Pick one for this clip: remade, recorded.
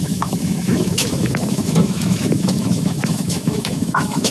remade